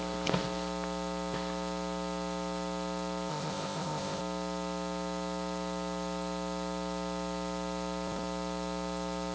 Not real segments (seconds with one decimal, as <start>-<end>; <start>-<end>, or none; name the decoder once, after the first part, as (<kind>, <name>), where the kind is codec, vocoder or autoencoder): 3.3-4.2 (codec, ZipCodec)